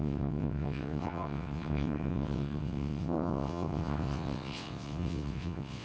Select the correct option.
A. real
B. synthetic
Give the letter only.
B